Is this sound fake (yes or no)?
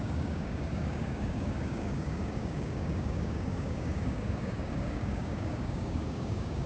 yes